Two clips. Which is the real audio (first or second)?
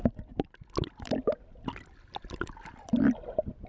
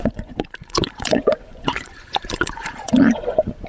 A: first